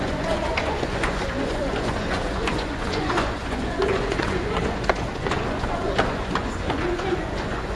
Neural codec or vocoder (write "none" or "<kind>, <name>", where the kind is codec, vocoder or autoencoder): vocoder, Vocos